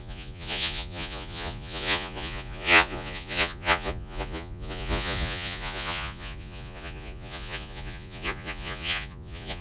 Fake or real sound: fake